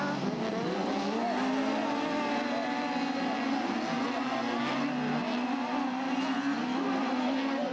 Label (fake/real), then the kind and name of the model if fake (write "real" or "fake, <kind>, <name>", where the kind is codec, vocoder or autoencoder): real